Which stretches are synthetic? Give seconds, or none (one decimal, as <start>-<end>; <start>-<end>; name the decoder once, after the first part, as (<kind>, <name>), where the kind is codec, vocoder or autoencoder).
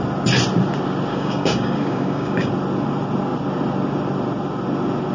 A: 1.1-2.5 (codec, DAC)